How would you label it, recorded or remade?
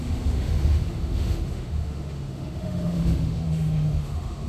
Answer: remade